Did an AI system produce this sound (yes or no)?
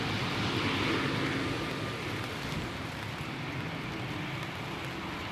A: no